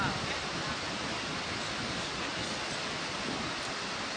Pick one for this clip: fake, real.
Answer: real